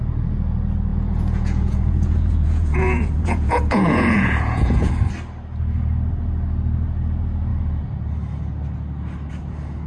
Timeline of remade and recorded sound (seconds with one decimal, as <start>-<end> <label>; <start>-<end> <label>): 0.0-0.9 recorded; 0.9-4.9 remade; 4.9-9.9 recorded